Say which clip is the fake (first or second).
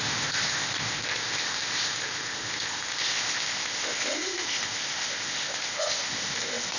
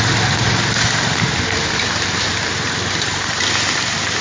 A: first